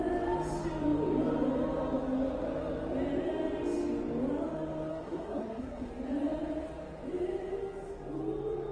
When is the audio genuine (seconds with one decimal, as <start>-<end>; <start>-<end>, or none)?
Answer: 0.0-4.9; 5.9-8.7